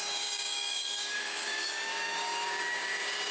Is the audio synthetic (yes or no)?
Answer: yes